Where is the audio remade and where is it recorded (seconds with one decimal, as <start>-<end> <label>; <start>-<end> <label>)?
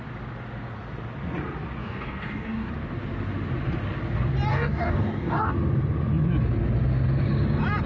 0.0-1.8 recorded; 1.8-2.7 remade; 2.7-4.5 recorded; 4.5-5.5 remade; 5.5-7.9 recorded